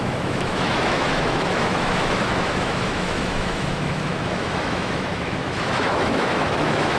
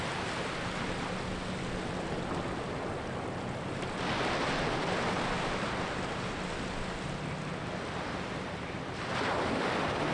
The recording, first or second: second